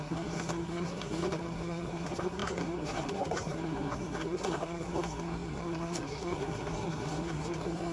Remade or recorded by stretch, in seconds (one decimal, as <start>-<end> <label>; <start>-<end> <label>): 0.0-7.9 remade